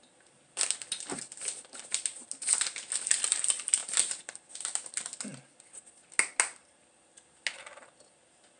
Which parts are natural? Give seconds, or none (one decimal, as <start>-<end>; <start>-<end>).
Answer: 0.0-8.6